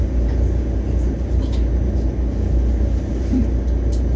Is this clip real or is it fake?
real